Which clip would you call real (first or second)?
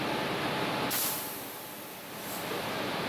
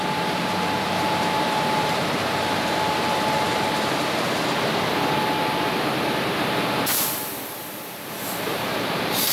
first